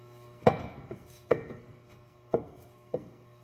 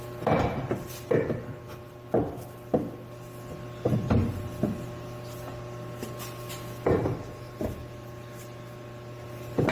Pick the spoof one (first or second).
first